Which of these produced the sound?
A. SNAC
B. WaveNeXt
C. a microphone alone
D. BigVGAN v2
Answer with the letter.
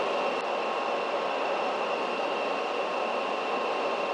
C